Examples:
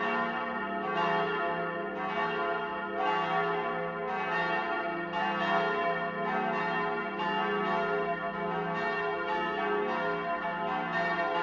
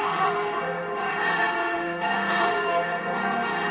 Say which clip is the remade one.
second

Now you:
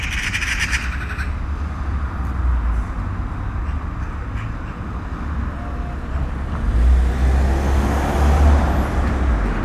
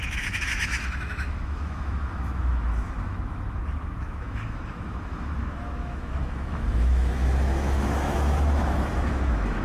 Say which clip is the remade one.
second